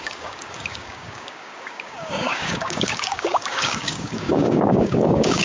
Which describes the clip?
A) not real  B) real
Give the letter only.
A